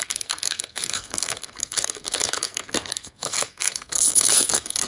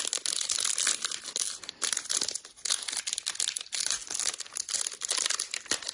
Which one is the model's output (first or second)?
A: first